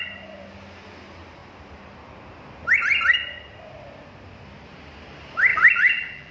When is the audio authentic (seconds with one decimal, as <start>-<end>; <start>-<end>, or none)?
0.0-5.5